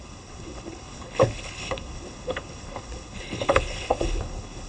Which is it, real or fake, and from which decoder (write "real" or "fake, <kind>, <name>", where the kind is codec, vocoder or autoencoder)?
fake, codec, HILCodec